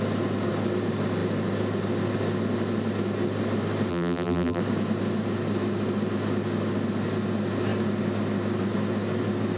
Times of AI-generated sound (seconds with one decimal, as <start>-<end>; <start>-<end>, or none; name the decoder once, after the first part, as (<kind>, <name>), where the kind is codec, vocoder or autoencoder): 3.9-4.6 (vocoder, BigVGAN v2)